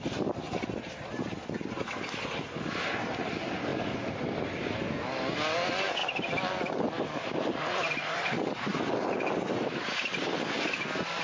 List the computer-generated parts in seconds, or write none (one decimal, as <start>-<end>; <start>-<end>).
8.7-9.9